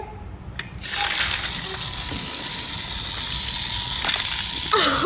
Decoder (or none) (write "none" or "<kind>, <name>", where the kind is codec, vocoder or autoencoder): none